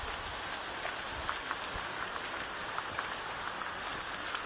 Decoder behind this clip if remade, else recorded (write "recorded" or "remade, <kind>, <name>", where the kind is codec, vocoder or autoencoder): recorded